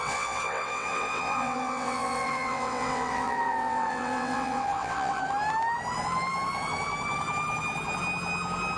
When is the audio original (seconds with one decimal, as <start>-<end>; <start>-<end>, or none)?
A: 5.2-8.8

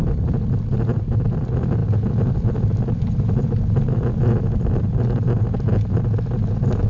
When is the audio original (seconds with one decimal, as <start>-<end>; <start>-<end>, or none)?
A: 0.0-6.9

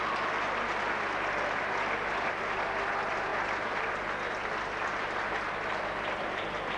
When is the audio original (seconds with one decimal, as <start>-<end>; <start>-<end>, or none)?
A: 0.0-6.8

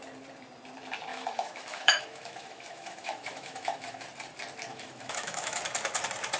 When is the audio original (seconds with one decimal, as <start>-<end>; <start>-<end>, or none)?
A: 0.0-1.1; 4.0-4.7; 5.6-6.4

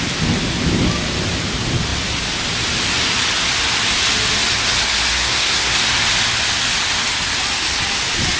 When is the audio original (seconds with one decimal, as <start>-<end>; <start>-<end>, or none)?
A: 0.0-5.1; 5.8-8.4

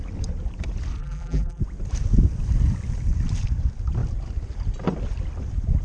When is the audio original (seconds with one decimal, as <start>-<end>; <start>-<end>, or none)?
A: 0.0-1.0; 1.6-5.8